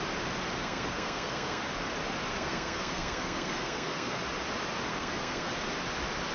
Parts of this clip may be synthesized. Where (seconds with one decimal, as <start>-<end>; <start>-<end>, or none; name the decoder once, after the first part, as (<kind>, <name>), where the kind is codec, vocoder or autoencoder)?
0.6-1.6 (codec, SNAC); 2.3-4.2; 4.9-5.5